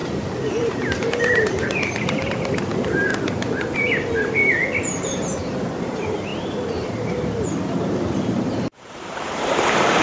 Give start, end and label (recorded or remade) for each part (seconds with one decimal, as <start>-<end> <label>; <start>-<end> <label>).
0.0-3.1 remade; 3.1-4.8 recorded; 4.8-10.0 remade